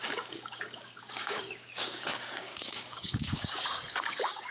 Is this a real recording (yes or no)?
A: no